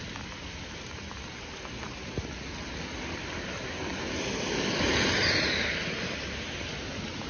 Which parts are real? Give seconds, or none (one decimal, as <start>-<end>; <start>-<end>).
0.0-7.3